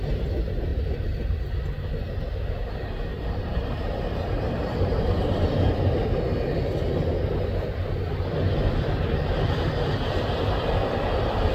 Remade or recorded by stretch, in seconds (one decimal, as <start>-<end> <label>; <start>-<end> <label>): 0.0-0.7 recorded; 0.7-1.4 remade; 1.4-3.1 recorded; 3.1-6.2 remade; 6.2-11.5 recorded